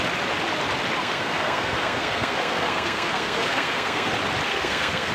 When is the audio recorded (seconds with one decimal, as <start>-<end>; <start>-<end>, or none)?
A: 0.0-1.0; 4.1-4.5